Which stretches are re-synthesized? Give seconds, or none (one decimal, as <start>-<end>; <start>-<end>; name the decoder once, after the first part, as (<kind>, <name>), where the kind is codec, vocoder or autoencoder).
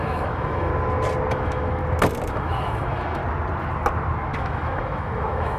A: 0.0-0.7 (autoencoder, DAC-VAE); 1.3-1.8; 2.3-3.2; 4.4-5.6